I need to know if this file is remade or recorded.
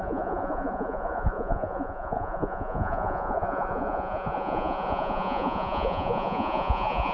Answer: remade